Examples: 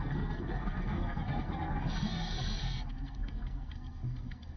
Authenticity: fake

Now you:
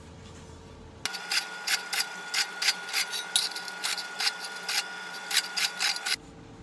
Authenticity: real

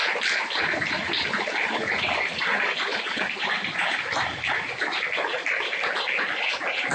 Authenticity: real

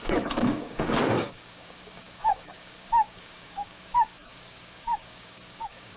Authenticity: fake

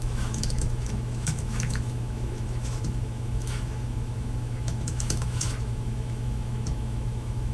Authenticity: fake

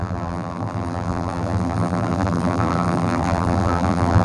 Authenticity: fake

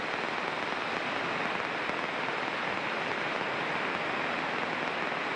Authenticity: real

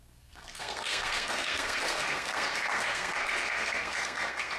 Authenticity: fake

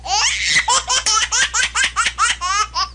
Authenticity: real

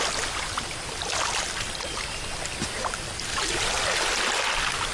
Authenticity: real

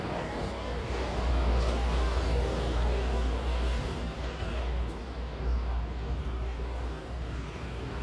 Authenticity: fake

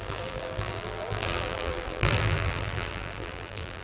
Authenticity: fake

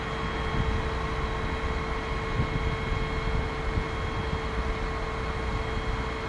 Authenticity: real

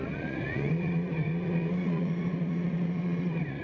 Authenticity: fake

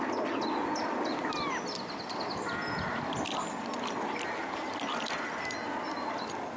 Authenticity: real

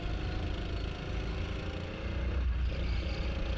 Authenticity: real